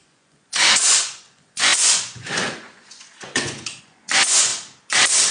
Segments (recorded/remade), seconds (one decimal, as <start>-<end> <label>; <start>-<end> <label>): 0.0-4.5 remade; 4.5-5.3 recorded